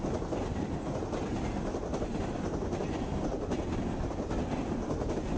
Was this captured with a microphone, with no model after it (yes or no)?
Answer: yes